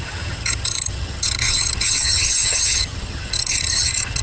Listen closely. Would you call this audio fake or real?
fake